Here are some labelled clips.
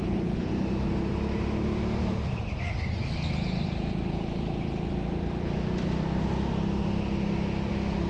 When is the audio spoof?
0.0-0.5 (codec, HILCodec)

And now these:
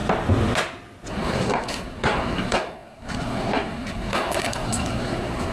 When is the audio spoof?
1.1-5.5 (codec, SNAC)

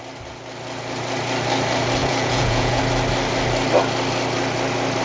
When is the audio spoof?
2.0-2.8 (vocoder, Vocos)